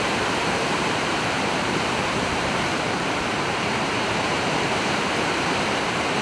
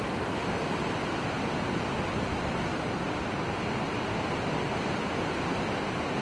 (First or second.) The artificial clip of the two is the first